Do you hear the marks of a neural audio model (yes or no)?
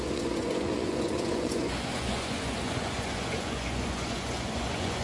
yes